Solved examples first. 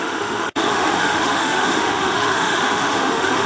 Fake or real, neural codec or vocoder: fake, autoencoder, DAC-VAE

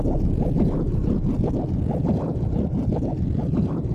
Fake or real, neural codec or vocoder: real